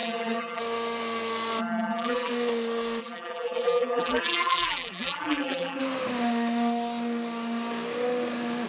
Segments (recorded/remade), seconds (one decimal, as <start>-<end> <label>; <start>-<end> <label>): 0.0-0.6 remade; 0.6-1.6 recorded; 1.6-2.3 remade; 2.3-3.0 recorded; 3.0-5.8 remade; 5.8-8.7 recorded